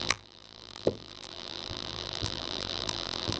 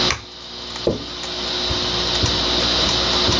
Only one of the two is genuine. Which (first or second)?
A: second